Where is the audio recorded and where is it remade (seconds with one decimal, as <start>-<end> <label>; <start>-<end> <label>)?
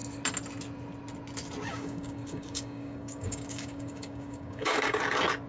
0.0-1.7 recorded; 1.7-5.0 remade; 5.0-5.5 recorded